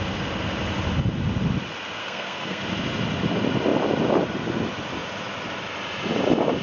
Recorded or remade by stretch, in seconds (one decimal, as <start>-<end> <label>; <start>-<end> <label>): 0.0-2.0 recorded; 2.0-2.6 remade; 2.6-6.6 recorded

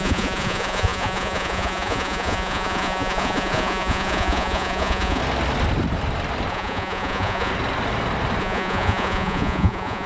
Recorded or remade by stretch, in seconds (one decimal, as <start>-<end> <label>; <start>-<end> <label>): 0.0-5.2 remade; 5.2-6.5 recorded; 6.5-7.5 remade; 7.5-8.4 recorded; 8.4-10.1 remade

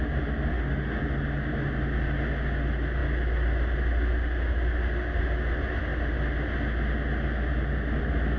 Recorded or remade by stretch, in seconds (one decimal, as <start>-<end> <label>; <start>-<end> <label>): 0.0-0.5 recorded; 0.5-1.0 remade; 1.0-8.4 recorded

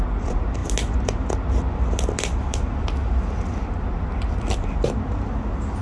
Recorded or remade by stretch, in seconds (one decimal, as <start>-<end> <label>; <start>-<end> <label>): 0.0-5.8 recorded

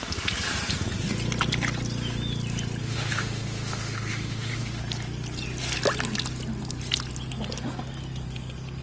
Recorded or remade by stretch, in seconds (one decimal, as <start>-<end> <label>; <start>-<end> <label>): 0.0-2.8 recorded; 2.8-4.8 remade; 4.8-8.8 recorded

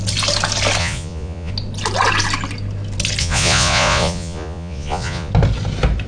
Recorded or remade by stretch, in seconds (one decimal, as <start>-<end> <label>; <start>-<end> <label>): 0.0-0.8 recorded; 0.8-1.5 remade; 1.5-3.2 recorded; 3.2-5.3 remade; 5.3-6.1 recorded